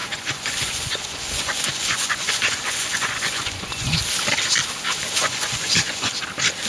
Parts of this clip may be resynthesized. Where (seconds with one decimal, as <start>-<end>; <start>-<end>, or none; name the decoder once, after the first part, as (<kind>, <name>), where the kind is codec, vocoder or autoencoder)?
0.0-4.0 (vocoder, Vocos); 5.2-6.1